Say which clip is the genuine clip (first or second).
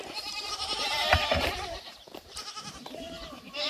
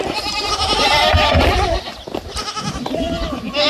second